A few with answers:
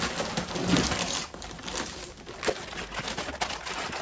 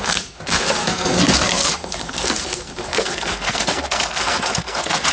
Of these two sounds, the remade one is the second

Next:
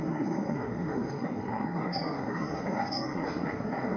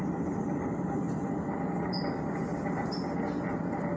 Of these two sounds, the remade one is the first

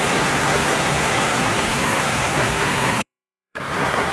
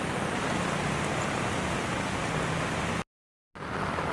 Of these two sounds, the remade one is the first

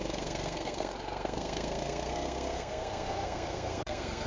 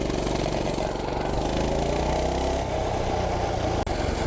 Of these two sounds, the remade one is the first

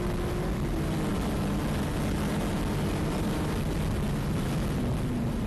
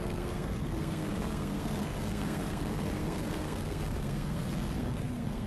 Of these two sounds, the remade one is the second